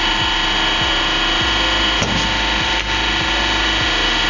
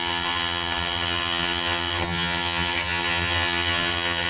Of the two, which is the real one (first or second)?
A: first